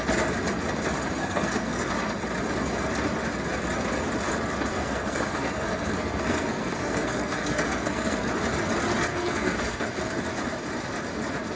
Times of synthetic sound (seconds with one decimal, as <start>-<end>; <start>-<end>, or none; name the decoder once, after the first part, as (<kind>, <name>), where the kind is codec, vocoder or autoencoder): 1.2-1.9 (codec, SNAC); 4.7-8.3; 9.1-10.0